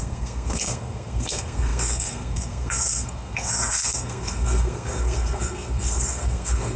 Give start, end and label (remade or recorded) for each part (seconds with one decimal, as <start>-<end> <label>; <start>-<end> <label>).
0.0-6.8 remade